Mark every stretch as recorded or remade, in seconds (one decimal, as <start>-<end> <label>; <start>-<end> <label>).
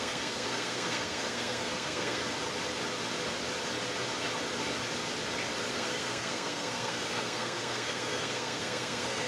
0.0-2.2 remade; 2.2-5.7 recorded; 5.7-9.3 remade